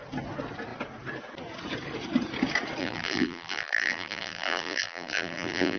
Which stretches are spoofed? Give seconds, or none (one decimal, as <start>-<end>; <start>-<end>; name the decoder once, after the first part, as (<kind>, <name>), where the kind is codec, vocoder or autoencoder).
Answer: 2.8-5.8 (vocoder, BigVGAN v2)